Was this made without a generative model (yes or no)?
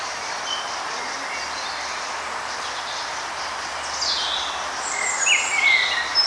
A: yes